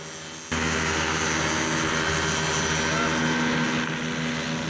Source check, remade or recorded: recorded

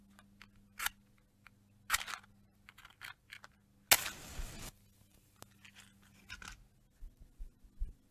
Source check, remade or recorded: recorded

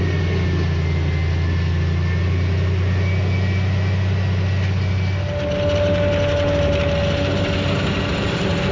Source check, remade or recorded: recorded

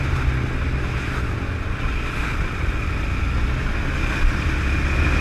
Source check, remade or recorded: recorded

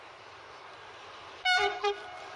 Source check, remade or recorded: remade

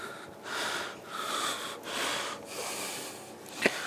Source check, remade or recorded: recorded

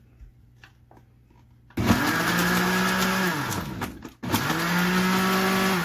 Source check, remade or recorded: recorded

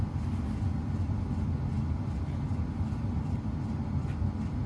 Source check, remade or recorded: recorded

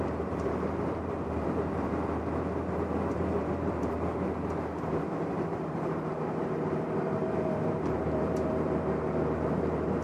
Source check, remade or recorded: remade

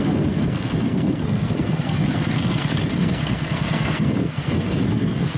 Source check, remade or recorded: remade